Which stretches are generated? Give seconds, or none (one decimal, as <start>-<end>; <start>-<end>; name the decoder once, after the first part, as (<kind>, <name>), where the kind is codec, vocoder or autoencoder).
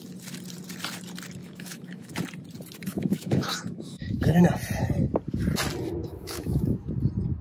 1.4-2.1 (autoencoder, DAC-VAE); 2.9-4.4; 6.0-6.9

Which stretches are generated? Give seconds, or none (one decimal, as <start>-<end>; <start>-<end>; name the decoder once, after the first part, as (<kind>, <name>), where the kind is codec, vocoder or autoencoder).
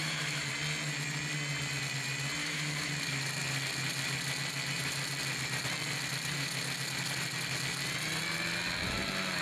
0.0-0.5 (autoencoder, DAC-VAE); 2.4-2.9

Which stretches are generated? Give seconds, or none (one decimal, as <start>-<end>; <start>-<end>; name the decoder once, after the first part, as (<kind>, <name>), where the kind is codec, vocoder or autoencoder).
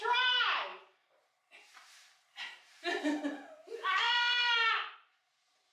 none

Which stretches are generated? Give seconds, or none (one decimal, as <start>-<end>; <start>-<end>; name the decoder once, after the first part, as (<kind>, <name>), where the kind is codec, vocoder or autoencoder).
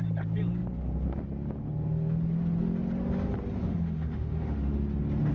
3.6-4.8 (autoencoder, DAC-VAE)